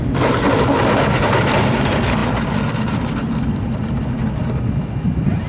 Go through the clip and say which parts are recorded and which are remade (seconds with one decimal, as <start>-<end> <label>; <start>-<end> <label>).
0.0-5.5 recorded